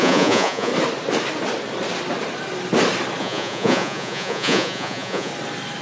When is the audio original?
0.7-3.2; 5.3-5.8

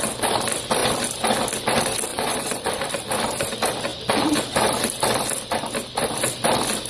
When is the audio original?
0.0-2.1; 2.7-6.9

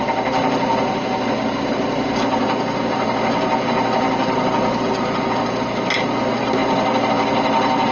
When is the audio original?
0.0-7.9